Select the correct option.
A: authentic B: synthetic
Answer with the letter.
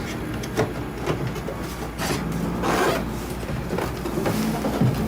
A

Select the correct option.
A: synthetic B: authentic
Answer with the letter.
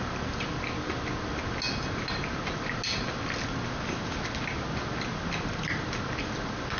B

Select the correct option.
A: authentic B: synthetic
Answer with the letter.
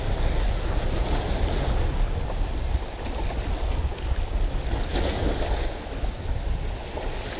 A